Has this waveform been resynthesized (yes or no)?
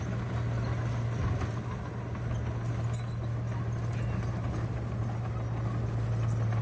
no